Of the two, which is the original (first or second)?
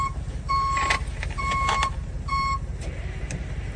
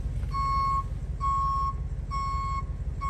second